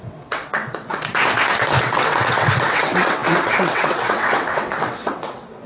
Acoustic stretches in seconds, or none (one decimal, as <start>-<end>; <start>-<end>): 0.9-1.8